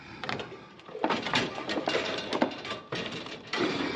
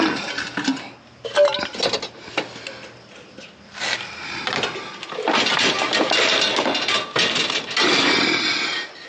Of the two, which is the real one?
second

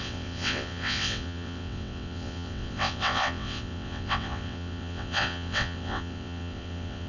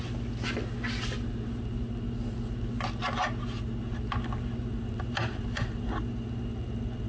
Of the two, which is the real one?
second